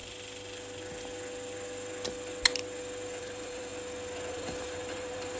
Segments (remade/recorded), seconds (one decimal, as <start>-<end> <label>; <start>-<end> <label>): 0.0-3.2 recorded; 3.2-3.7 remade; 3.7-4.3 recorded; 4.3-5.4 remade